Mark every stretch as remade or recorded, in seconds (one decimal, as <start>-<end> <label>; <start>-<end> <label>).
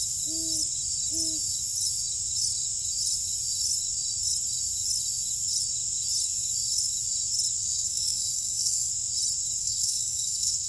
0.0-7.6 recorded; 7.6-8.9 remade; 8.9-9.6 recorded; 9.6-10.7 remade